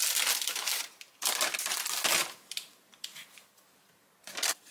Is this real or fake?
real